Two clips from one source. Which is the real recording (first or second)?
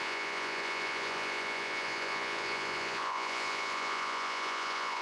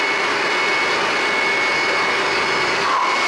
second